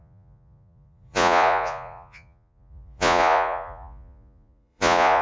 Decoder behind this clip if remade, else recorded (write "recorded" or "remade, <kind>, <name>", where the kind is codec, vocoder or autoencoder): remade, vocoder, Vocos